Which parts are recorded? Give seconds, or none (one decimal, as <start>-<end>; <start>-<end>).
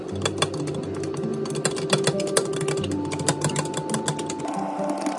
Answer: 0.0-5.2